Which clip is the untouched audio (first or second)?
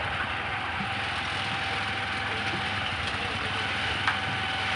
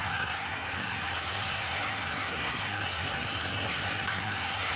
first